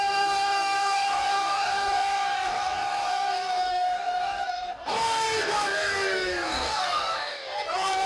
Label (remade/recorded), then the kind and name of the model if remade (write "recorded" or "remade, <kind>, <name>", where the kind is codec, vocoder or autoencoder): remade, codec, DAC